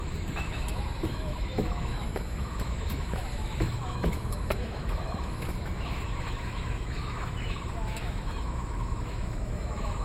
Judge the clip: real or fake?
fake